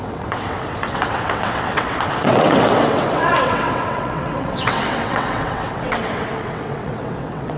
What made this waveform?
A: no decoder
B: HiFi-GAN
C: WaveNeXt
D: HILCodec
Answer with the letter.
C